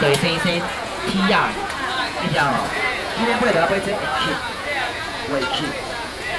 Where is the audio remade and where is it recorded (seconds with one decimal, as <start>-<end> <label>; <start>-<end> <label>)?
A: 0.0-6.4 remade